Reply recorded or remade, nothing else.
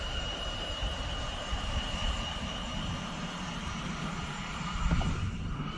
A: remade